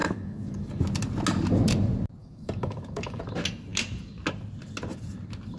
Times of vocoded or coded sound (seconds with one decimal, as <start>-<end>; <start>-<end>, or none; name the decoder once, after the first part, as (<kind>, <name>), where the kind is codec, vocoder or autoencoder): 0.0-0.8 (codec, DAC); 2.2-3.2